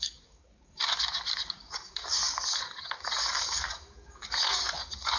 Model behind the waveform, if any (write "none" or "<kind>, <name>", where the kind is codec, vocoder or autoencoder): codec, DAC